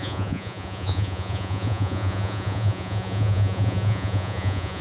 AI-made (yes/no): yes